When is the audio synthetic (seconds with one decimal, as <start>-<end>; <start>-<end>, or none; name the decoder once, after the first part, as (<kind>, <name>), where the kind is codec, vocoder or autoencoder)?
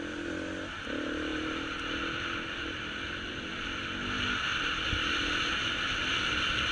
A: none